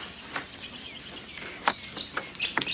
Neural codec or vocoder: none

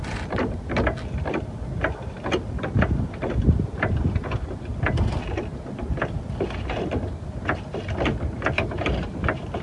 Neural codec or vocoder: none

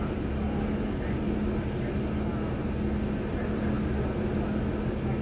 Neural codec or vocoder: none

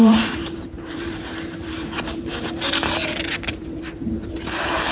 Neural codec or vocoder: vocoder, BigVGAN v2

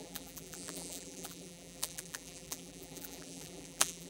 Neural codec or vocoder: vocoder, BigVGAN v2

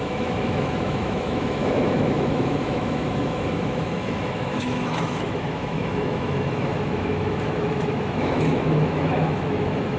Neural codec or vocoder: autoencoder, DAC-VAE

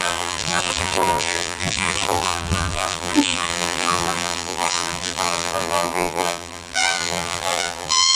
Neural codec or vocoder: vocoder, BigVGAN v2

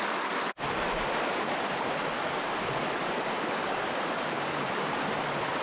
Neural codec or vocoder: none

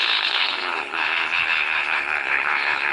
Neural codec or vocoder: codec, HILCodec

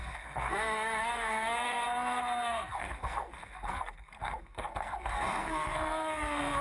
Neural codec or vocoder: codec, SNAC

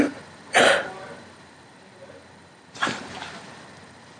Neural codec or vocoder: none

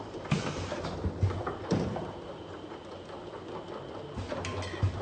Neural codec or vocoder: none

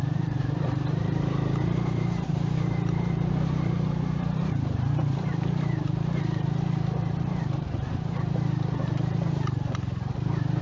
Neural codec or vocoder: vocoder, BigVGAN v2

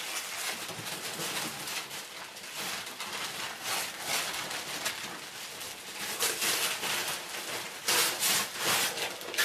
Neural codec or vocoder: none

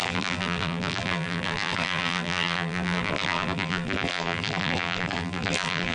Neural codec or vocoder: vocoder, BigVGAN v2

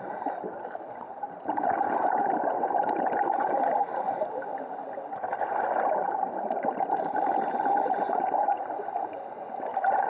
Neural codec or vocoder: none